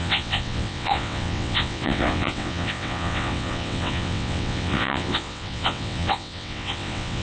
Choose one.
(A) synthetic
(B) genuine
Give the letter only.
A